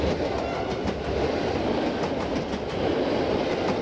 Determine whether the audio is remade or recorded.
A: recorded